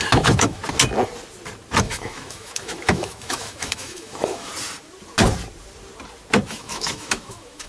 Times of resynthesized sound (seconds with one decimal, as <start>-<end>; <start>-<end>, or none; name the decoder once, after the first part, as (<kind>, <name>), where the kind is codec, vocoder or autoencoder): 0.0-0.6 (autoencoder, DAC-VAE); 1.8-4.5; 6.5-7.7